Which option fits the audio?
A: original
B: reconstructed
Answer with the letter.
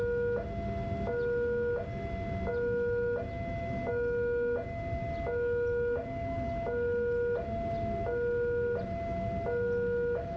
A